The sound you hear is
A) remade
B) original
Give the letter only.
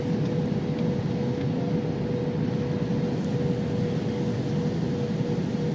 B